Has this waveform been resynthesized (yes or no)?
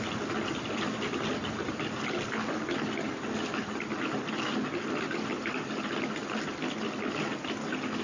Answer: no